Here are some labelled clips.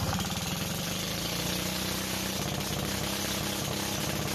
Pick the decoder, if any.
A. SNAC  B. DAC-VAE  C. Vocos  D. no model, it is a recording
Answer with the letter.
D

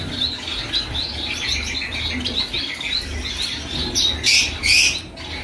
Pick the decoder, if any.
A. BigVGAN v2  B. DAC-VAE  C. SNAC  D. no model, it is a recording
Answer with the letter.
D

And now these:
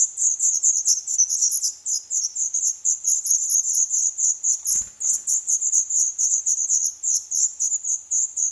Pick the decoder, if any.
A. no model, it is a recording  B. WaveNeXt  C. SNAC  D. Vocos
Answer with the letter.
A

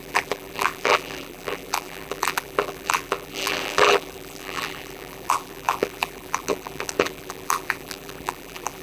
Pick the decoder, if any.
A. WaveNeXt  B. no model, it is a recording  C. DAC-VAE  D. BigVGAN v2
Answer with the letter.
D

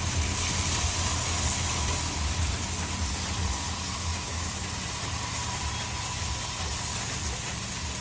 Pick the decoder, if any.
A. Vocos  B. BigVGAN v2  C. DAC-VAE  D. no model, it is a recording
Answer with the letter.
D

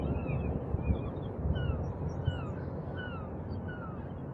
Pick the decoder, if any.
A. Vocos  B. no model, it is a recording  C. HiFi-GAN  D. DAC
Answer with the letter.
B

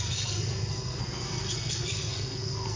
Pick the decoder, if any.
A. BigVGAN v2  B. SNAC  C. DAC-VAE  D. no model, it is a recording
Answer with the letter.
B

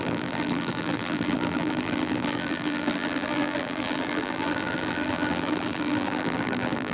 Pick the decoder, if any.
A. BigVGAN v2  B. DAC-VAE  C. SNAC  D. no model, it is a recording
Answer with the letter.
A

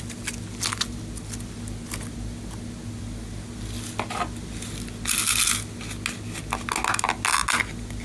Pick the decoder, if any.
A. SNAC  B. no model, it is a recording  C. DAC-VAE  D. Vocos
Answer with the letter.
B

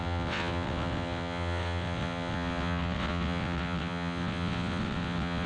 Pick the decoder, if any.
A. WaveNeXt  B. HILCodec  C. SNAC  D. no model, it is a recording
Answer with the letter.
A